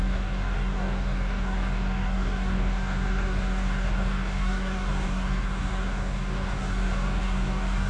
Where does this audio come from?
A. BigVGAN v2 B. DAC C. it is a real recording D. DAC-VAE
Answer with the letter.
B